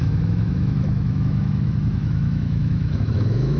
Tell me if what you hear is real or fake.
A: fake